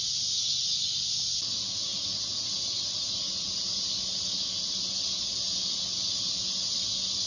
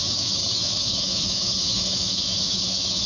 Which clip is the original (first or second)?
first